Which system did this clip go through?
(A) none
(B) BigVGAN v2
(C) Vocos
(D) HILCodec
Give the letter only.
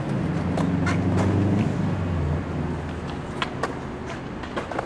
A